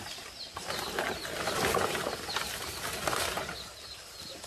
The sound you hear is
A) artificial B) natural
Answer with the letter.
B